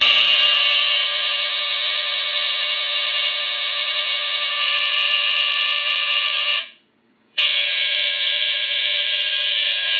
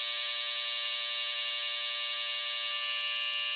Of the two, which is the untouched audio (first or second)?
second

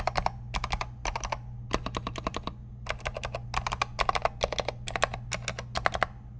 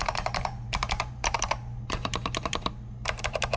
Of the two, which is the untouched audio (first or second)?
first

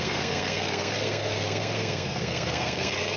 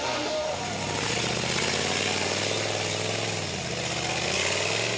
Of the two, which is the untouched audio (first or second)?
second